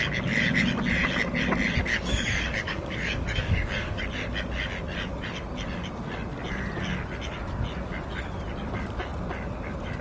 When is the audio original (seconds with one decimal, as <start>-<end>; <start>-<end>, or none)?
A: 0.0-1.9; 4.0-10.0